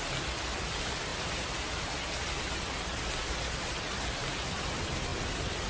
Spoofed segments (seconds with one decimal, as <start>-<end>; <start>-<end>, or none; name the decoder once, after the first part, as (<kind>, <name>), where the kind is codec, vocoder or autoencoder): none